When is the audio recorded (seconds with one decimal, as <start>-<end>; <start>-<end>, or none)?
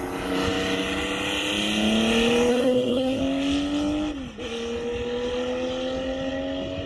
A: 0.0-2.5; 3.2-6.9